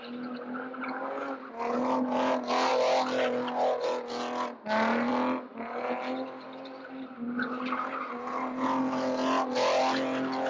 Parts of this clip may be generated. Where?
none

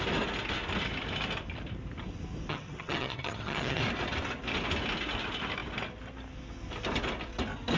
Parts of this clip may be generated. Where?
2.5-3.8

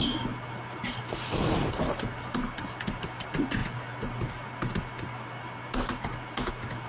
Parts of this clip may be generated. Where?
none

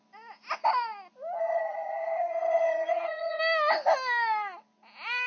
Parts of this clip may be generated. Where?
1.4-3.4